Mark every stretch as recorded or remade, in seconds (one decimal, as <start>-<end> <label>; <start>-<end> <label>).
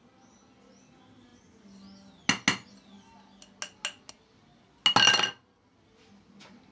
0.0-6.7 recorded